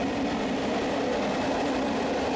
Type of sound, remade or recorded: recorded